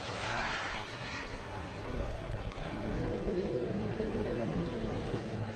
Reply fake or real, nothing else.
fake